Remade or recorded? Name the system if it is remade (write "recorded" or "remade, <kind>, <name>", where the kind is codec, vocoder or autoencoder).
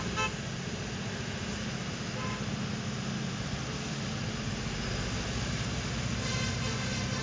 recorded